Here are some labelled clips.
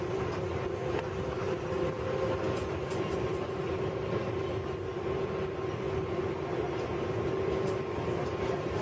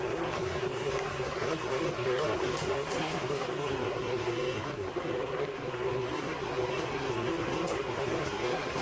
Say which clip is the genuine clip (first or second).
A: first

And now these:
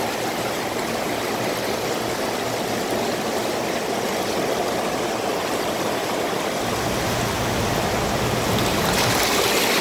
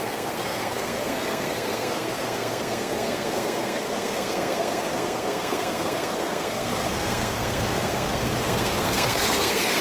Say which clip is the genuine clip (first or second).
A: first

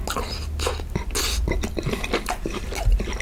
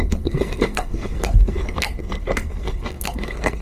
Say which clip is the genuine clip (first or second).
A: first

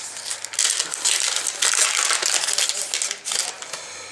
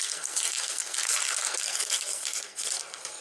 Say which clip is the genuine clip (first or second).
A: first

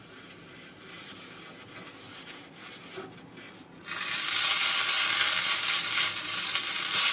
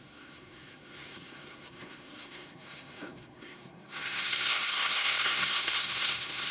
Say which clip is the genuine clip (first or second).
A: first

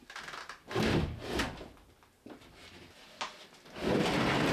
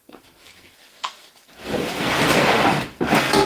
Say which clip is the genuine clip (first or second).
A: first